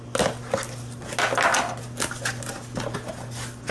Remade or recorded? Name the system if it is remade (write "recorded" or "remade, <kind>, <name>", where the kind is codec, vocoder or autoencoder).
recorded